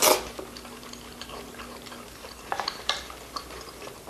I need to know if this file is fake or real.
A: fake